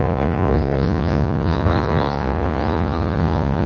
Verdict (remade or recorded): remade